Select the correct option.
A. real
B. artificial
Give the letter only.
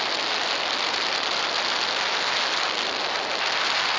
A